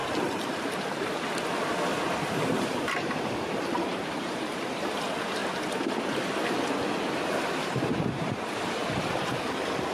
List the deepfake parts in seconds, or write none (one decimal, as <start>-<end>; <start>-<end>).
2.1-5.4; 7.0-8.8